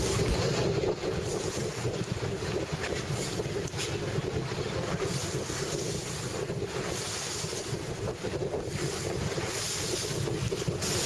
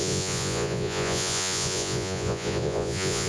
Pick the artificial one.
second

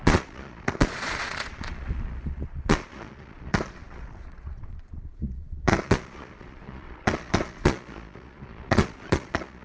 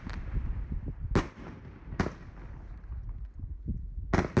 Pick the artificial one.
first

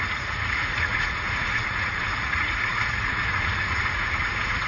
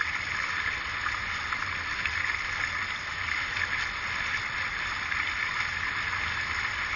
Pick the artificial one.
first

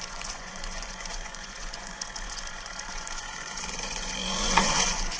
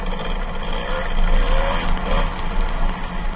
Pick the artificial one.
first